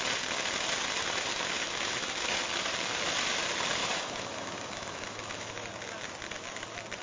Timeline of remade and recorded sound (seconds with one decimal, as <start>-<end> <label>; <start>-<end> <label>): 0.0-1.3 recorded; 1.3-2.4 remade; 2.4-3.8 recorded; 3.8-5.5 remade; 5.5-7.0 recorded